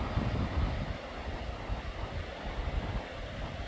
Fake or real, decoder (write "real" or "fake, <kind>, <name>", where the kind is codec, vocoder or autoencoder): real